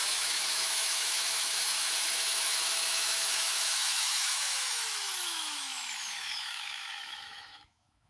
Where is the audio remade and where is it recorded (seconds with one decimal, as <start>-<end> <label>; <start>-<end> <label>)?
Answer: 0.0-8.1 remade